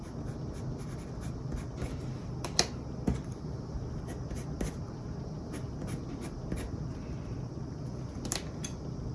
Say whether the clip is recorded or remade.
recorded